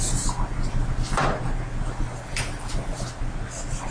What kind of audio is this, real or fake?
real